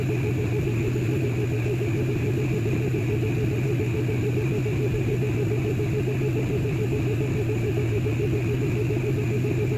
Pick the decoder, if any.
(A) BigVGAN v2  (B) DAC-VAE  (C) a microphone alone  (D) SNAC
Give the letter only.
C